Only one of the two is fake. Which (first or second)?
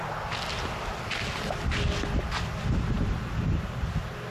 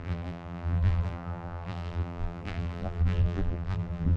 second